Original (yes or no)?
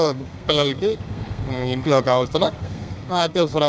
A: no